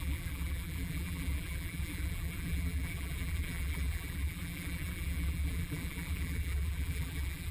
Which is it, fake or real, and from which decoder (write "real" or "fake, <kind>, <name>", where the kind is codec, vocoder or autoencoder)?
fake, vocoder, BigVGAN v2